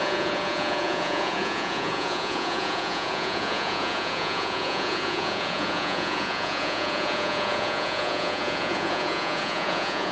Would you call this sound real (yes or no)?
no